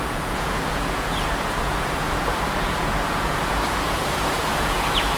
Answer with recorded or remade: remade